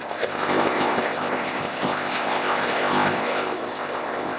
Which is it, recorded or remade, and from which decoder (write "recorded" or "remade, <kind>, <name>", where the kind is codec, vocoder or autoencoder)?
remade, codec, ZipCodec